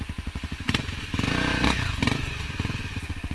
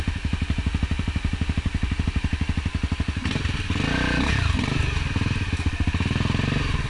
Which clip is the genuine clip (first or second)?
second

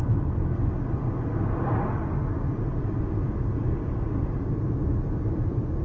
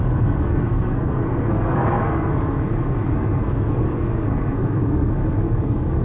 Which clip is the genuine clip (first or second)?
first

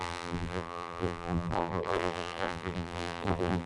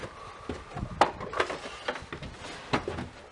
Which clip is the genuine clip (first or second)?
second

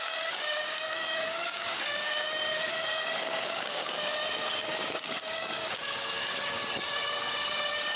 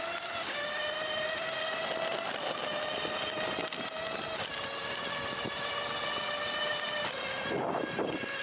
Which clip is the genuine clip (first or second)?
second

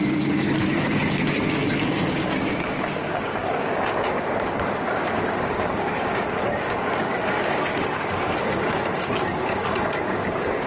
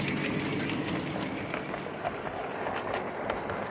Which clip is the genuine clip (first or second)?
second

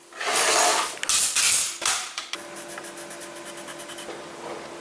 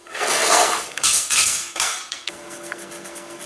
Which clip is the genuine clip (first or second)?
first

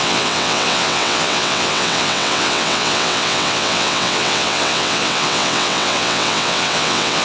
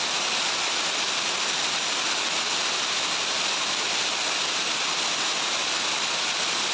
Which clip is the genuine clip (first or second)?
second